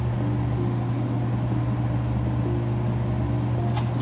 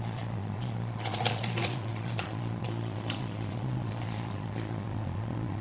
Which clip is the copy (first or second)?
second